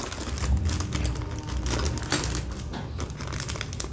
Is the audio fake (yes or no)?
no